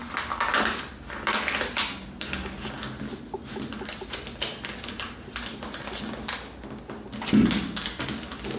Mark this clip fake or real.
real